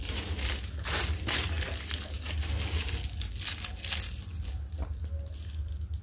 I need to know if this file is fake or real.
real